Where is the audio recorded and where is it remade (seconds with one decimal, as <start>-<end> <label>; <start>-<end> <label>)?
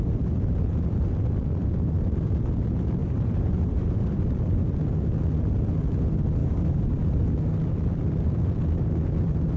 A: 0.0-3.0 recorded; 3.0-4.2 remade; 4.2-6.4 recorded; 6.4-7.2 remade; 7.2-9.6 recorded